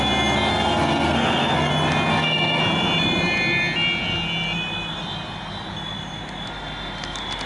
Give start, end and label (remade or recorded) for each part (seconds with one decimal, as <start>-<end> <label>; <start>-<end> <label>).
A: 0.0-0.5 recorded; 0.5-1.7 remade; 1.7-2.1 recorded; 2.1-2.6 remade; 2.6-7.5 recorded